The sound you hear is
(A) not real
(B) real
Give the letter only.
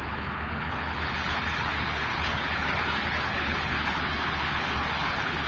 A